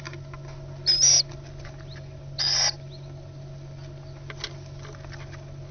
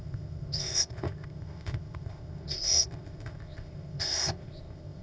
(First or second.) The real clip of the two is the first